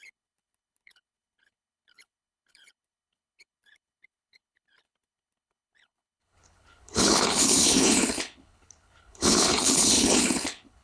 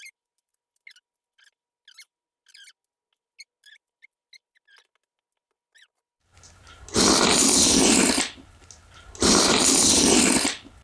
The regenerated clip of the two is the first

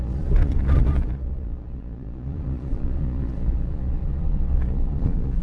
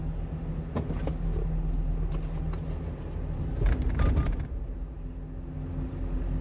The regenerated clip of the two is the first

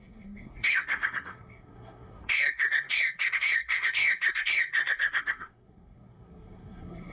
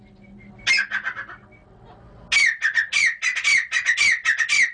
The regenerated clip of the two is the first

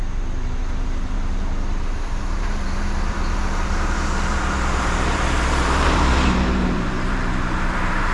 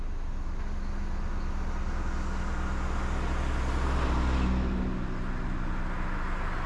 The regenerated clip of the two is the first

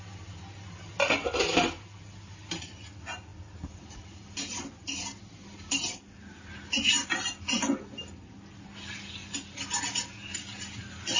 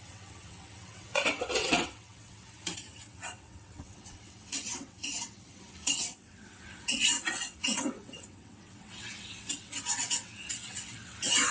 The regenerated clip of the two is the second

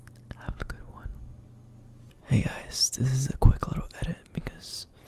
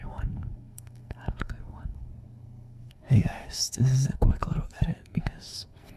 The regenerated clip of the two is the second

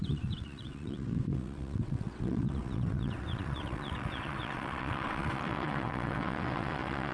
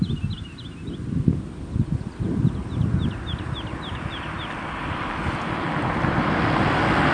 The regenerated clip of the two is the first